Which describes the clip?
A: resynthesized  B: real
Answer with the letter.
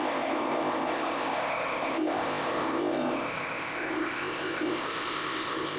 A